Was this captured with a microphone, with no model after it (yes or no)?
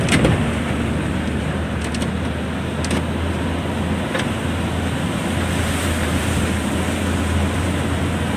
yes